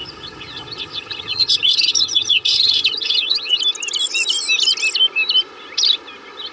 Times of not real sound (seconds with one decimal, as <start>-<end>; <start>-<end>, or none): 0.0-3.6